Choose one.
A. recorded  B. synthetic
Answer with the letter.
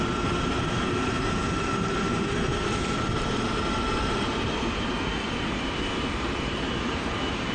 B